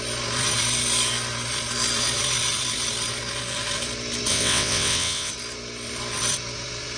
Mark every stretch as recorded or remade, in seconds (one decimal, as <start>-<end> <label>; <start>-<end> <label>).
0.0-4.3 recorded; 4.3-5.3 remade; 5.3-7.0 recorded